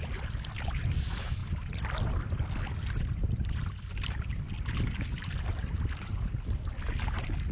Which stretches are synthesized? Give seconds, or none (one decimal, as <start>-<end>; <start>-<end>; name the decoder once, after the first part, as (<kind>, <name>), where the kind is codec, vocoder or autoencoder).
none